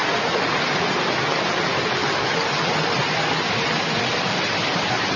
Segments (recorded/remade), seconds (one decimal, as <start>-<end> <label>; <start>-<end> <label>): 0.0-5.2 recorded